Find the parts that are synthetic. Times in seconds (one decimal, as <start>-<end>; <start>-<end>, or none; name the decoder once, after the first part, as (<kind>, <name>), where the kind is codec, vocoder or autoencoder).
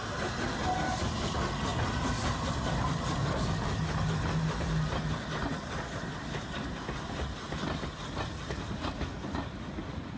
none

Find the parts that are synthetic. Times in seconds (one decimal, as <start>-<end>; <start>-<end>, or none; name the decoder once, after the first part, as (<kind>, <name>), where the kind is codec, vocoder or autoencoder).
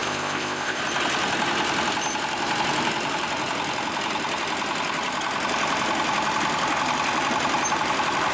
0.0-0.8 (codec, ZipCodec)